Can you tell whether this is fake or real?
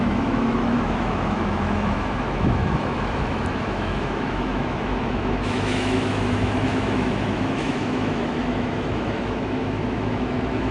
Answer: fake